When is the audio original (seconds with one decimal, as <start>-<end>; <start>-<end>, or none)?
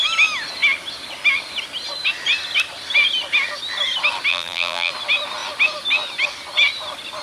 0.0-4.3; 4.9-7.2